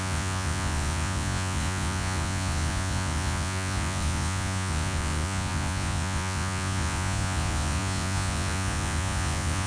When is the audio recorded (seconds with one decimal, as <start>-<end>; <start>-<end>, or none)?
none